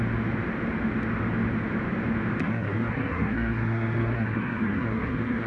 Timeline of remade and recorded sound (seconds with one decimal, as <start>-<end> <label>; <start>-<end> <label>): 0.0-2.4 recorded; 2.4-5.5 remade